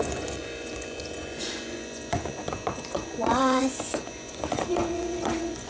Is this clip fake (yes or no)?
yes